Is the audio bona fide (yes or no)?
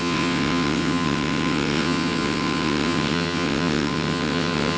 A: no